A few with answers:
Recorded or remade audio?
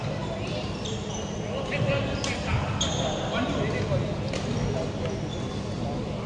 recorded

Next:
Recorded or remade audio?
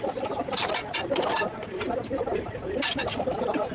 recorded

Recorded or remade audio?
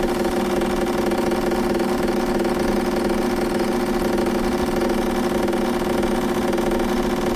recorded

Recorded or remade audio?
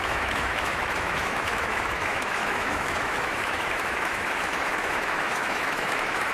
remade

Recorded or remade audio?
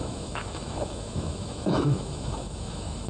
remade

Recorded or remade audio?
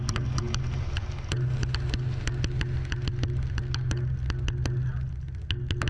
recorded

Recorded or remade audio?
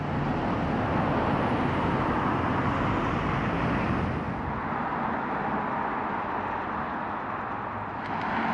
recorded